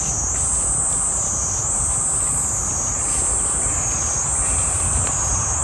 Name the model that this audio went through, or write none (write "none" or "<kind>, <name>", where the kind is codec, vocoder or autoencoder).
none